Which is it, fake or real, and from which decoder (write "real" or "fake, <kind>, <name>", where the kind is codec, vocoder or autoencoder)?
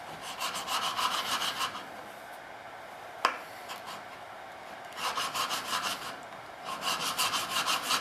real